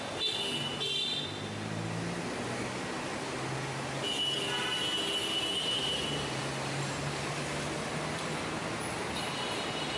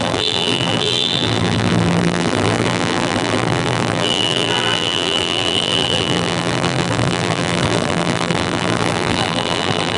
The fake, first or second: second